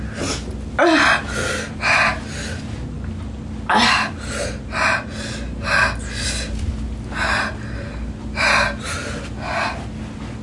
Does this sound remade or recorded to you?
recorded